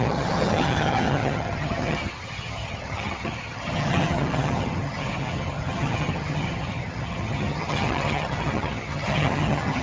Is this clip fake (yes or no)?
yes